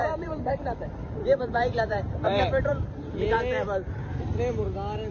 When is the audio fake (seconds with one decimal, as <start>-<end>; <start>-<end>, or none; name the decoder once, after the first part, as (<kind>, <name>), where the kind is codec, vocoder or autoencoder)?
0.0-2.7 (vocoder, BigVGAN v2)